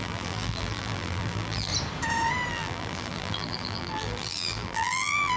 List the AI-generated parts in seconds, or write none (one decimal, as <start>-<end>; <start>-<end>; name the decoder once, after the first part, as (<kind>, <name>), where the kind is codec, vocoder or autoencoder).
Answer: 0.0-1.7 (vocoder, BigVGAN v2); 2.5-5.4